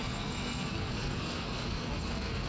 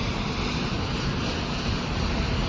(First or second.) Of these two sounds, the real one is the second